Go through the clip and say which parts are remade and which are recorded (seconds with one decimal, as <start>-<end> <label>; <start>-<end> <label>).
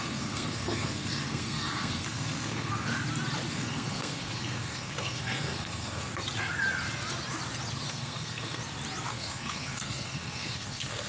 0.0-2.9 remade; 2.9-3.5 recorded; 3.5-6.1 remade; 6.1-7.9 recorded; 7.9-8.6 remade; 8.6-9.1 recorded; 9.1-11.1 remade